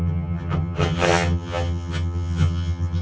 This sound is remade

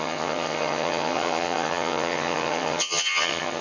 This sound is remade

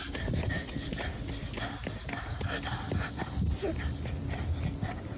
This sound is recorded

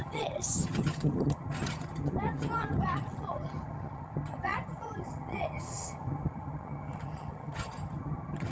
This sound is remade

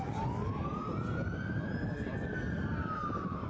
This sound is recorded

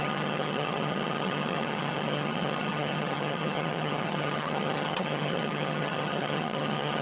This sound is remade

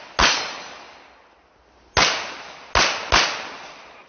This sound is recorded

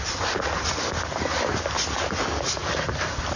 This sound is recorded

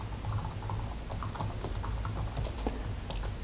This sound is recorded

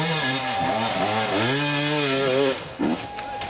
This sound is recorded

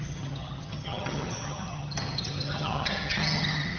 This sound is remade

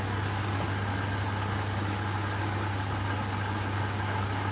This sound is recorded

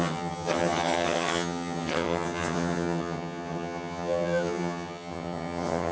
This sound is remade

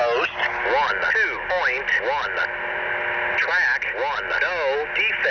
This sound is recorded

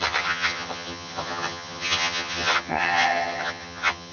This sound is remade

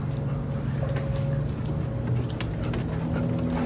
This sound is recorded